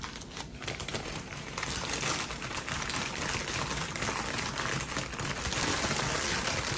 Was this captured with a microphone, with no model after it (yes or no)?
yes